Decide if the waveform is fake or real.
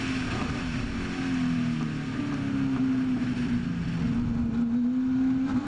real